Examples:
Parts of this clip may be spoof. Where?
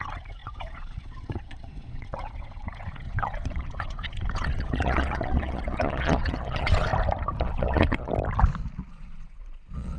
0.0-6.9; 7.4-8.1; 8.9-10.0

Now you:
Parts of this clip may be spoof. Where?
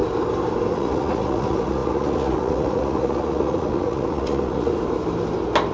0.7-4.7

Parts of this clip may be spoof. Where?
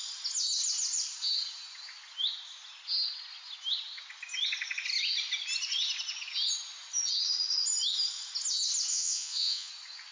8.9-9.7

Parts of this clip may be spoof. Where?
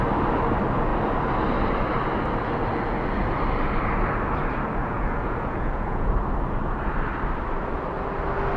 4.8-6.2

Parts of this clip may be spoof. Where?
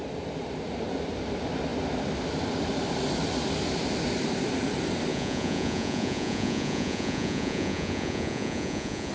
5.1-9.1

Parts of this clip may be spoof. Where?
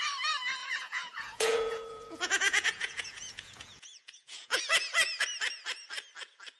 0.6-4.6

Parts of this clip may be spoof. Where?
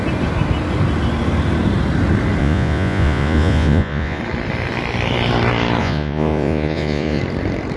2.4-4.2; 5.8-7.2